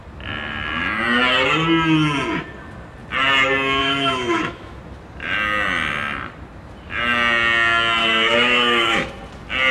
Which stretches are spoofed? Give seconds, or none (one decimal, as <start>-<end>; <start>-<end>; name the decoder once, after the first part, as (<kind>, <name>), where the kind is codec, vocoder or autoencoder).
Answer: 3.8-4.8 (autoencoder, DAC-VAE); 8.0-9.1